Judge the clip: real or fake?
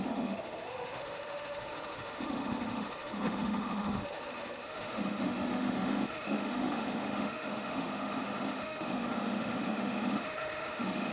fake